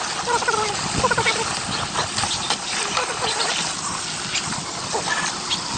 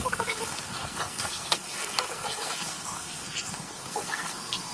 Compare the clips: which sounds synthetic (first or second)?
second